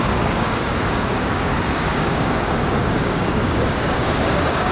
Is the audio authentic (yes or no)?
no